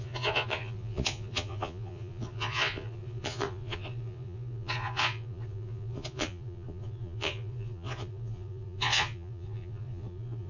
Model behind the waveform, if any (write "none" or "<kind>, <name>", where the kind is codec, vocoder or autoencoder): vocoder, Vocos